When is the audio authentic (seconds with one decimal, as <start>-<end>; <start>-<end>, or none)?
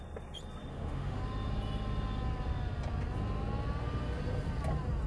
0.0-0.7; 1.2-5.1